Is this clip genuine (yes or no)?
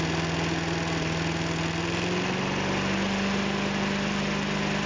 yes